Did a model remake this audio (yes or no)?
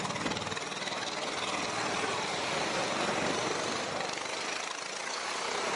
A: no